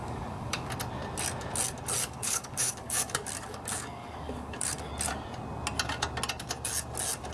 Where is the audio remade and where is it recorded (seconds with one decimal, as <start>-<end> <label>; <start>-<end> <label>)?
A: 0.0-0.7 remade; 0.7-2.0 recorded; 2.0-4.9 remade; 4.9-7.3 recorded

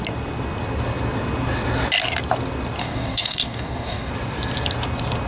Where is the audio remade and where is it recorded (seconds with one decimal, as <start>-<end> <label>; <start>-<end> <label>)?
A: 0.0-2.8 recorded; 2.8-4.1 remade; 4.1-5.3 recorded

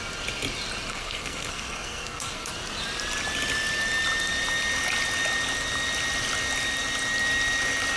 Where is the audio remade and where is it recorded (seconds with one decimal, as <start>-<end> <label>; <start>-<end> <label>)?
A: 0.0-0.9 recorded; 0.9-2.5 remade; 2.5-8.0 recorded

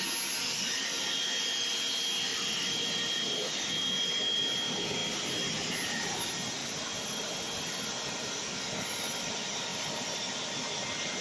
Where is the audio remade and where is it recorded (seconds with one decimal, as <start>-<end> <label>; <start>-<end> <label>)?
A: 0.0-2.3 recorded; 2.3-3.1 remade; 3.1-6.6 recorded; 6.6-8.1 remade; 8.1-9.7 recorded; 9.7-10.2 remade; 10.2-11.2 recorded